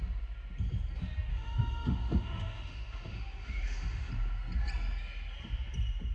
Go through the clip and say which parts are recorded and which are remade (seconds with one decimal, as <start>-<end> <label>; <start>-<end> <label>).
0.0-1.3 recorded; 1.3-4.1 remade; 4.1-6.1 recorded